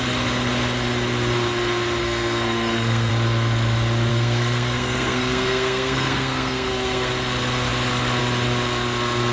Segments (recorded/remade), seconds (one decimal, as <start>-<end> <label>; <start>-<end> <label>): 0.0-2.0 recorded; 2.0-3.1 remade; 3.1-4.1 recorded; 4.1-7.1 remade; 7.1-9.3 recorded

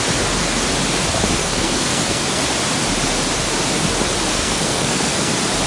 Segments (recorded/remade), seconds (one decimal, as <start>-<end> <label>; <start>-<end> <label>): 0.0-1.4 recorded; 1.4-2.4 remade; 2.4-4.3 recorded; 4.3-5.3 remade; 5.3-5.7 recorded

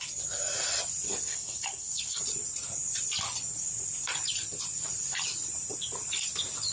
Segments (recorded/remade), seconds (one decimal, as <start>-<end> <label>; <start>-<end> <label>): 0.0-1.3 recorded; 1.3-2.2 remade; 2.2-6.7 recorded

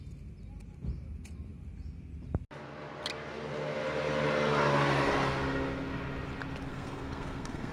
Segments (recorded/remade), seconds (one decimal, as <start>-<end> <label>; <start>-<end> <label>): 0.0-6.7 recorded; 6.7-7.7 remade

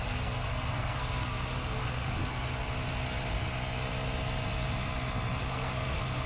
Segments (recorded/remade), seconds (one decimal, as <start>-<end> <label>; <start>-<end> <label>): 0.0-2.2 remade; 2.2-5.4 recorded; 5.4-6.3 remade

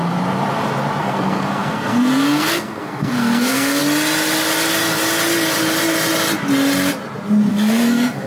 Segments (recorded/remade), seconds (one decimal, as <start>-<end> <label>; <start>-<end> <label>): 0.0-1.0 recorded; 1.0-3.8 remade; 3.8-7.5 recorded; 7.5-8.3 remade